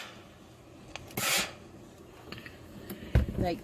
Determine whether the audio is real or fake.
real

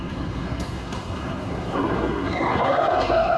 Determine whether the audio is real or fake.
fake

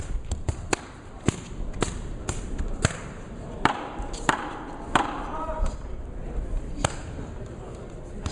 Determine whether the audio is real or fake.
fake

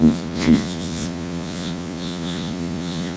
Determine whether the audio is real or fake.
fake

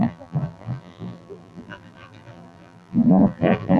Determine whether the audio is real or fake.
fake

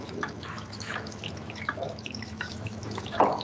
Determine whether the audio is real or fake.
fake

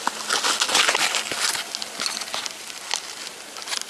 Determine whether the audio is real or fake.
real